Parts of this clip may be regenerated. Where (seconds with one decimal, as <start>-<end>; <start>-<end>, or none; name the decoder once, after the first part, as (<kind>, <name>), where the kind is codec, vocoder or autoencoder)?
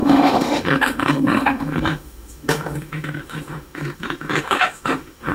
0.0-5.3 (autoencoder, DAC-VAE)